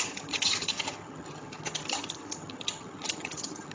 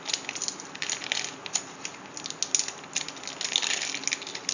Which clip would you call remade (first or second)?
first